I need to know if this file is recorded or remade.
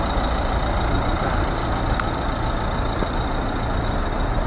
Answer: recorded